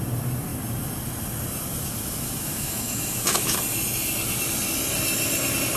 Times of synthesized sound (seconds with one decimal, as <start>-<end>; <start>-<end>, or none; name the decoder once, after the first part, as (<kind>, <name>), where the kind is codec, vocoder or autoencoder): 1.7-3.6 (autoencoder, DAC-VAE)